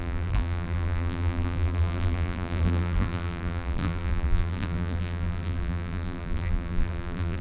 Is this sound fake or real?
fake